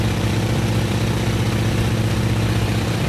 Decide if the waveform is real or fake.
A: fake